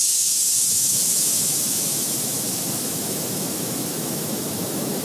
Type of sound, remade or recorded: remade